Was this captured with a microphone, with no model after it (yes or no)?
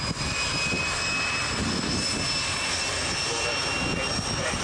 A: yes